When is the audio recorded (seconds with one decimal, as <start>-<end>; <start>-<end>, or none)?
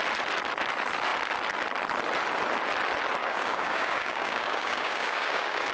0.0-3.2